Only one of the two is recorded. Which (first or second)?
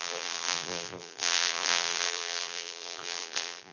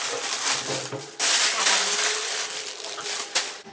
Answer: second